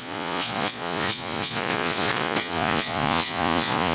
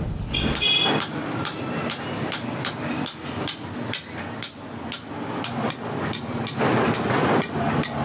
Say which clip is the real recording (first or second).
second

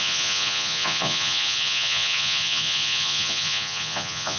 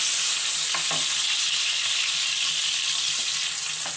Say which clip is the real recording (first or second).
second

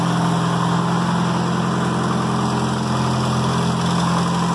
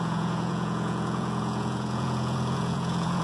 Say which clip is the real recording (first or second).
first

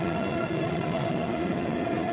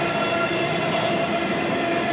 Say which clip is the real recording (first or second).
second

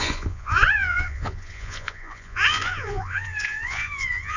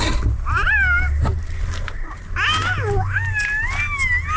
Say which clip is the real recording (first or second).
second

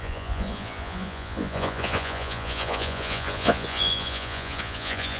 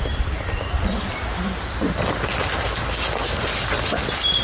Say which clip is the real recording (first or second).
second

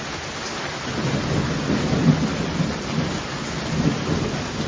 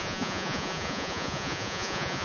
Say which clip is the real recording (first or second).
first